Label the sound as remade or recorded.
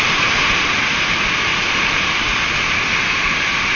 recorded